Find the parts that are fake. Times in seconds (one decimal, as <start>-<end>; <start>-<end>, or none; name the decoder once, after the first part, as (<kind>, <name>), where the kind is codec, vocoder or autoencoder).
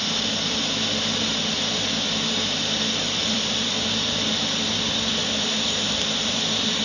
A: 3.2-5.8 (vocoder, BigVGAN v2)